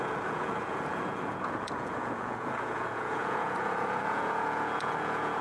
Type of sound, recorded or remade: remade